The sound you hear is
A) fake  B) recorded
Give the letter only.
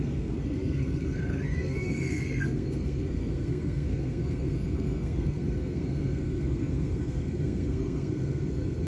A